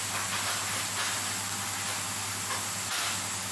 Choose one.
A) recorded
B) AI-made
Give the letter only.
A